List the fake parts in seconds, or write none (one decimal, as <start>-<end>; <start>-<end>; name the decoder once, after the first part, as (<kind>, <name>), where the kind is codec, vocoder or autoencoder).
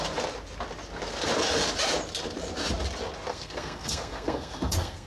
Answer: 3.3-5.1 (codec, SNAC)